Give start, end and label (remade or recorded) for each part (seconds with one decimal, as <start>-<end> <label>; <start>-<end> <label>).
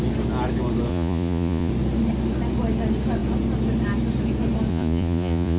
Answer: 0.0-0.9 recorded; 0.9-1.7 remade; 1.7-4.7 recorded; 4.7-5.6 remade